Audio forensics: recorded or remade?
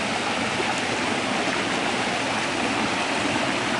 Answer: recorded